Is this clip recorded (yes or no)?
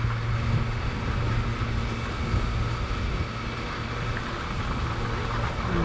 yes